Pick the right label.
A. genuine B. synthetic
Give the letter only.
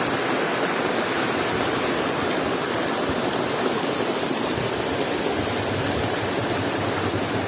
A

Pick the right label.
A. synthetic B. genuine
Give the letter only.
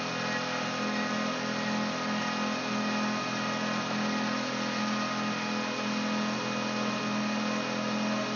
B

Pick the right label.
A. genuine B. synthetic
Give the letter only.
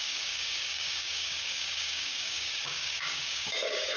B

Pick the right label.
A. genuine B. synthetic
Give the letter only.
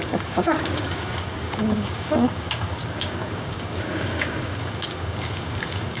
B